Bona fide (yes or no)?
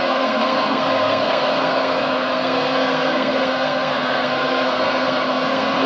no